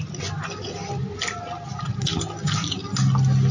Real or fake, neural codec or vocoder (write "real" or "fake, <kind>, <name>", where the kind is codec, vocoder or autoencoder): real